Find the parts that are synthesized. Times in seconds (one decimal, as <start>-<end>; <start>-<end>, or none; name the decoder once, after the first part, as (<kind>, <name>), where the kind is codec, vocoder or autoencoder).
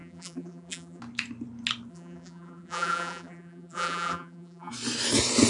0.0-1.0 (vocoder, BigVGAN v2); 1.9-4.7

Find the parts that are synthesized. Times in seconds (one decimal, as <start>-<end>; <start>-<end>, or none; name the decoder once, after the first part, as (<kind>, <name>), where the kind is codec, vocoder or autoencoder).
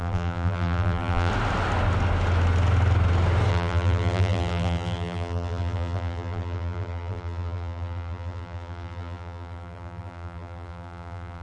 0.0-1.3 (vocoder, BigVGAN v2); 3.5-11.4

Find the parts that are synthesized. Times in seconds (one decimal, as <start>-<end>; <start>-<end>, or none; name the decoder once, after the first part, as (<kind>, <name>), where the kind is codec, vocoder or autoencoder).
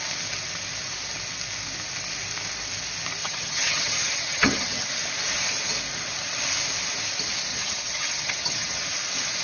3.2-4.9 (vocoder, HiFi-GAN); 7.5-8.8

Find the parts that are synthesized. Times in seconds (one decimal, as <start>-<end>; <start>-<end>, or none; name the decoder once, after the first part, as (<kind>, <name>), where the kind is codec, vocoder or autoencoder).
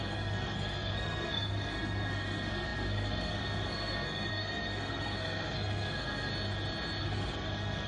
0.0-6.3 (codec, SNAC); 7.0-7.9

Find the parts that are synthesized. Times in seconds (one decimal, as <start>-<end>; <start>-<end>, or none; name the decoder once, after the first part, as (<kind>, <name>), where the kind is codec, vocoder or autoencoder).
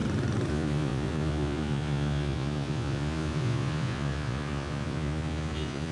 0.5-5.9 (vocoder, Vocos)